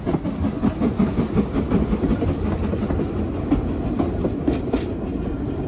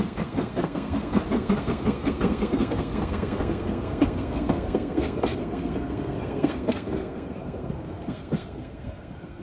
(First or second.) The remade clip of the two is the second